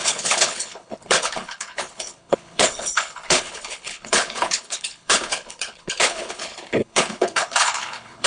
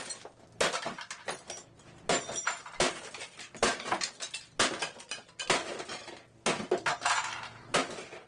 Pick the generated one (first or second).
first